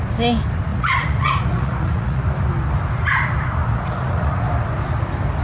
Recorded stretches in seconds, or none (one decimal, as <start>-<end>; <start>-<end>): 0.0-0.7; 2.2-3.6; 4.5-5.4